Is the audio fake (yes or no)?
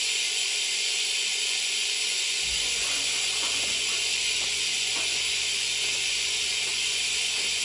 yes